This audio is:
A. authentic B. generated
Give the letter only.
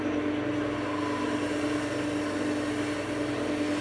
A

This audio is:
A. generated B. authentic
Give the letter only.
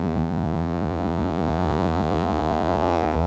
A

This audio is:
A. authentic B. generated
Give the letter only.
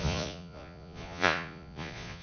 B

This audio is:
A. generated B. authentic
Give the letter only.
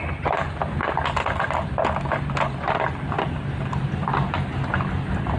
B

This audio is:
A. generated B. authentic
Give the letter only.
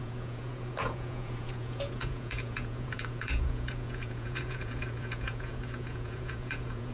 A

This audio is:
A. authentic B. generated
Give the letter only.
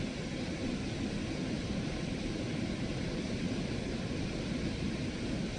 A